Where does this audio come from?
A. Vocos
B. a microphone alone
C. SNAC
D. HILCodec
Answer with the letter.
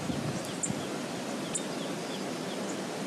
B